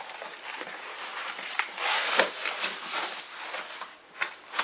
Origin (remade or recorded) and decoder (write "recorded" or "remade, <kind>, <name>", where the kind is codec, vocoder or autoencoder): recorded